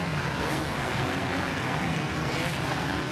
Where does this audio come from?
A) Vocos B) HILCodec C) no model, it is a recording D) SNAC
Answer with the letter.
D